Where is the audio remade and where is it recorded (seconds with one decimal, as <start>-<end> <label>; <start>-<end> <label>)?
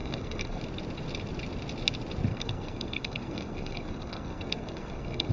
0.0-0.6 remade; 0.6-2.3 recorded; 2.3-5.3 remade